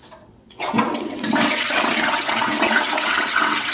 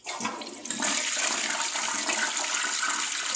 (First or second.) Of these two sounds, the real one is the second